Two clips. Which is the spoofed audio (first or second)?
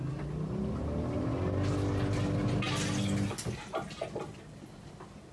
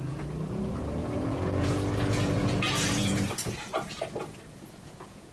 second